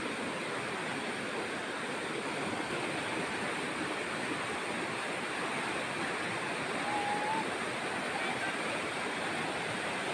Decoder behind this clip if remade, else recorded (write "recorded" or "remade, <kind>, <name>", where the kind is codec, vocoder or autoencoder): recorded